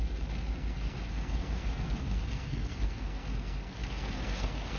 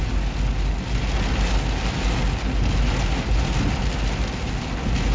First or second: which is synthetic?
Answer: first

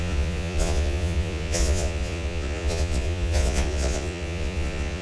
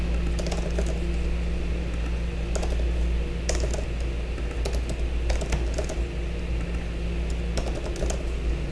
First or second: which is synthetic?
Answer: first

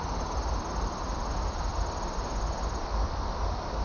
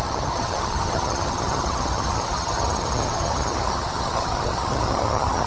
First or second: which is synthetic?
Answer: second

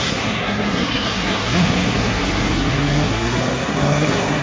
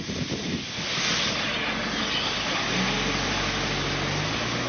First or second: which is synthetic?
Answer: first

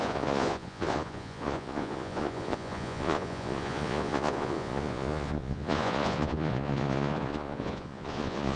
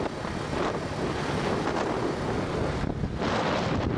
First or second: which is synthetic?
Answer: first